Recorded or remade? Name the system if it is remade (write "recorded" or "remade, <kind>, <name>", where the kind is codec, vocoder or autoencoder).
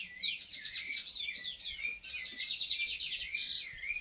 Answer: recorded